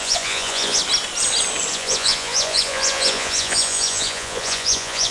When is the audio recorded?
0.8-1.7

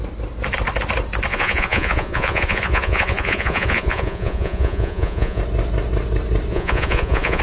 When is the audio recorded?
0.0-1.3; 5.4-6.5

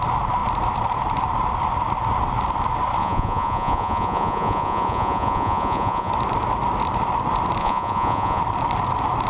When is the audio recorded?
0.0-3.0; 6.1-7.6; 8.4-9.3

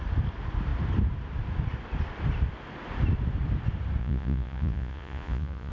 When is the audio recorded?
0.0-4.0

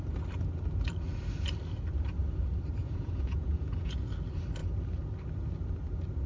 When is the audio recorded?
0.0-2.8; 4.1-6.3

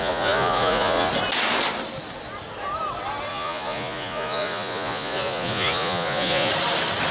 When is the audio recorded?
1.1-3.3; 6.5-7.1

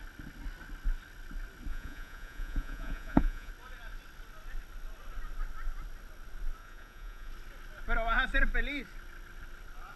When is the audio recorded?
0.0-1.7; 3.5-6.6; 7.3-10.0